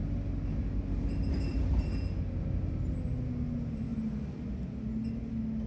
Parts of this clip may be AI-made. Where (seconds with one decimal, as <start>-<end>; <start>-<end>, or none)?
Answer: none